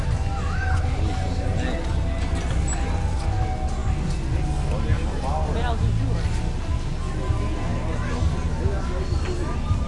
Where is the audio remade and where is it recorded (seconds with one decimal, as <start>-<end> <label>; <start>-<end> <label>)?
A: 0.0-9.9 recorded